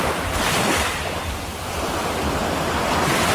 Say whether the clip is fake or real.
real